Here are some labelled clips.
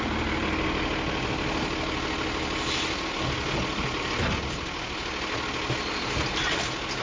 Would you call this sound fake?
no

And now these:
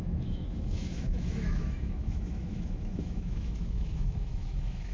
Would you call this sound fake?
yes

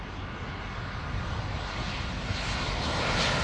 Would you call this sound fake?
no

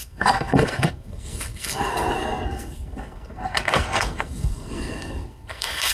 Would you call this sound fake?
yes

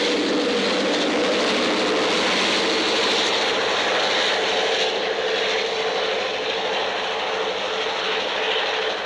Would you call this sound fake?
no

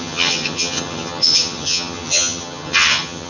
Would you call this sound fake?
yes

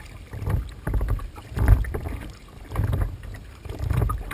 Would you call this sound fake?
yes